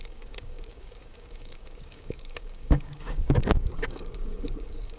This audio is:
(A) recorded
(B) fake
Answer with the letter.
B